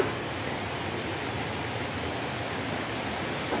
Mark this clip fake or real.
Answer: real